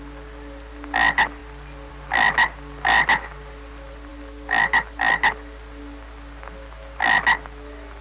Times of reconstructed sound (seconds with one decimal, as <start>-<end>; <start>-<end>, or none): none